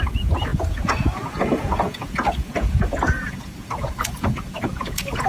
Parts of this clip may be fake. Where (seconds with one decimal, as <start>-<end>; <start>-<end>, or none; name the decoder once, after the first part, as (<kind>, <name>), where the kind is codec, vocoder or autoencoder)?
0.0-5.3 (vocoder, Vocos)